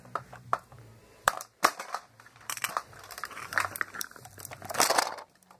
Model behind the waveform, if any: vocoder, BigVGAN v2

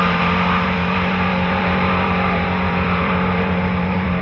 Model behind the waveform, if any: vocoder, BigVGAN v2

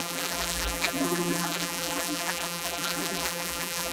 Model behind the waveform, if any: vocoder, BigVGAN v2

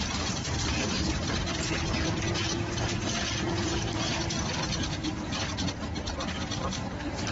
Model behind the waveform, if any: vocoder, BigVGAN v2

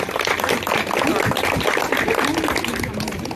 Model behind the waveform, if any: none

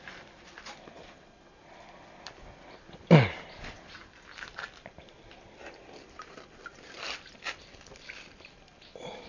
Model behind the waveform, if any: vocoder, BigVGAN v2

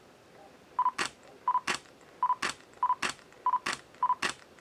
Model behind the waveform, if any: none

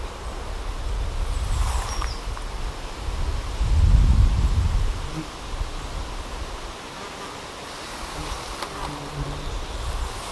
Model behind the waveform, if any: none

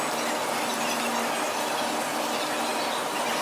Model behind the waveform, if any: none